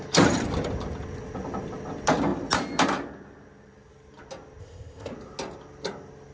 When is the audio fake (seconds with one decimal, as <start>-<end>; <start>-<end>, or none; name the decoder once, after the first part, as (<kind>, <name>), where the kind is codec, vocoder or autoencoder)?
4.6-5.1 (codec, ZipCodec)

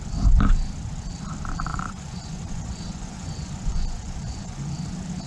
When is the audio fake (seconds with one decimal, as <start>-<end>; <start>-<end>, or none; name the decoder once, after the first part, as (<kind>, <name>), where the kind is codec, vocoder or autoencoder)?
1.7-4.7 (vocoder, Vocos)

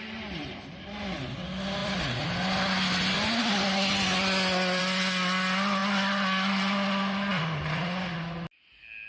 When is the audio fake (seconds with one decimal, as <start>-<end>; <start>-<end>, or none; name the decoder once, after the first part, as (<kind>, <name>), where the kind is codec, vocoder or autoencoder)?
none

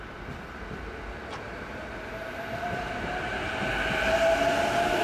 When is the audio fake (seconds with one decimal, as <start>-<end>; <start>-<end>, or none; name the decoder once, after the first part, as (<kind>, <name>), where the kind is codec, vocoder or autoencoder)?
1.5-3.6 (vocoder, BigVGAN v2)